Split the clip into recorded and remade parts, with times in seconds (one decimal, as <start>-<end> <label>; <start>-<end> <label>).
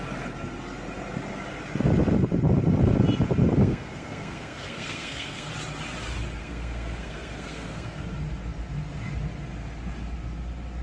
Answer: 0.0-3.6 recorded; 3.6-5.5 remade; 5.5-6.4 recorded; 6.4-8.0 remade; 8.0-10.8 recorded